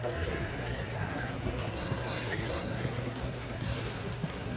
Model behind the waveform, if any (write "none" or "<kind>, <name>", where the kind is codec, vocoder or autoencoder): codec, SNAC